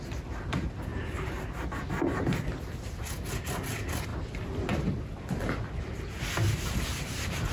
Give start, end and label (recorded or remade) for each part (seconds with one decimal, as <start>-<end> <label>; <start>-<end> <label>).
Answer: 0.0-7.5 recorded